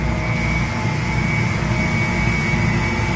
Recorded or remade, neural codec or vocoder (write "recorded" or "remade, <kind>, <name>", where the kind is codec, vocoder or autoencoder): recorded